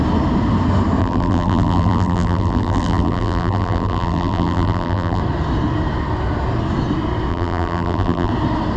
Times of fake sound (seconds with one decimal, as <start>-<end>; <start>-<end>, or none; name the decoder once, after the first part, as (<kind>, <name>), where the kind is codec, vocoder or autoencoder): 1.0-5.2 (vocoder, BigVGAN v2); 7.3-8.3